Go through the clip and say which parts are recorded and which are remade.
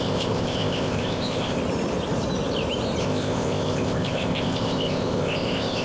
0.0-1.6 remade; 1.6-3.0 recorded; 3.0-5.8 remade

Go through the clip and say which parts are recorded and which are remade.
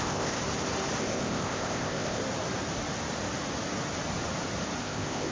0.0-0.4 remade; 0.4-1.0 recorded; 1.0-2.2 remade; 2.2-4.8 recorded; 4.8-5.3 remade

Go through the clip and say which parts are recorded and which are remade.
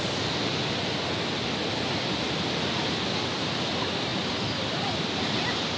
0.0-5.8 recorded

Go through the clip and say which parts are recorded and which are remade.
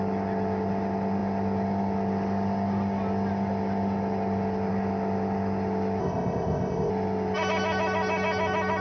0.0-6.0 recorded; 6.0-6.9 remade; 6.9-8.8 recorded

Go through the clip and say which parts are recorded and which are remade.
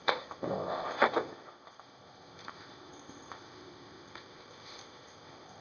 0.0-5.6 remade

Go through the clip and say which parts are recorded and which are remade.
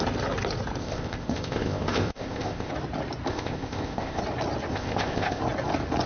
0.0-0.8 recorded; 0.8-2.7 remade; 2.7-3.3 recorded; 3.3-4.2 remade; 4.2-4.7 recorded; 4.7-5.4 remade; 5.4-6.1 recorded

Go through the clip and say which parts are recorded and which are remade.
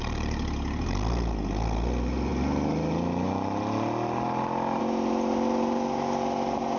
0.0-6.8 recorded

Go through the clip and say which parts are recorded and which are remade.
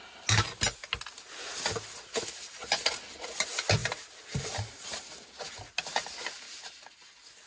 0.0-7.5 recorded